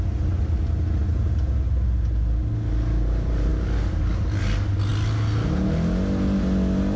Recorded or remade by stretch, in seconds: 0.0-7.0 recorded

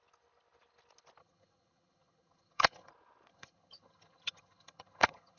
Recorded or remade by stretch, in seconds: 0.0-1.2 recorded; 1.2-2.9 remade; 2.9-3.3 recorded; 3.3-5.4 remade

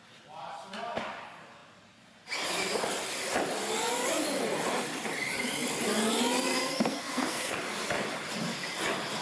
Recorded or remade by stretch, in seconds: 0.0-6.5 recorded; 6.5-7.5 remade; 7.5-9.2 recorded

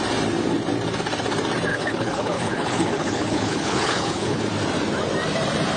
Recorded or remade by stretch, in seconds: 0.0-1.7 recorded; 1.7-4.4 remade; 4.4-5.8 recorded

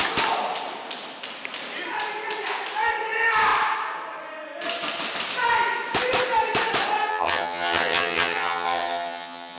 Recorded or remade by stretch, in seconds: 0.0-7.1 recorded; 7.1-9.6 remade

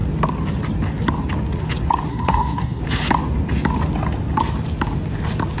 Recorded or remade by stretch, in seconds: 0.0-2.1 recorded; 2.1-2.8 remade; 2.8-5.6 recorded